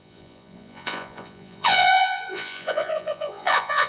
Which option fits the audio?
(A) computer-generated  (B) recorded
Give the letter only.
A